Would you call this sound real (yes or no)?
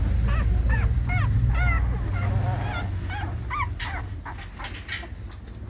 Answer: yes